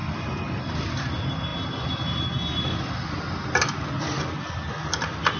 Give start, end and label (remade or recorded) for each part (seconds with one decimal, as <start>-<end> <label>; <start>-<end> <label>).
0.0-5.4 recorded